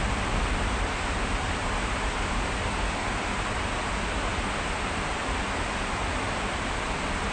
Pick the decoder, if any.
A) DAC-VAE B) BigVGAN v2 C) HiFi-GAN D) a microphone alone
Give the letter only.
D